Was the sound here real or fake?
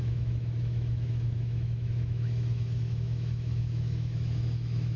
fake